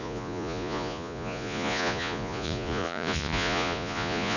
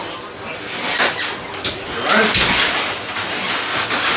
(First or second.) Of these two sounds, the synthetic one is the first